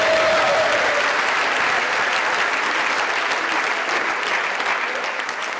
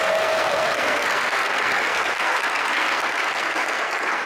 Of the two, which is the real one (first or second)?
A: first